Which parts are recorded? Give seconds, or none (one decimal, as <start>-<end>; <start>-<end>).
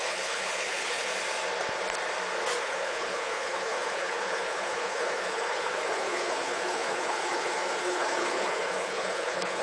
1.1-2.6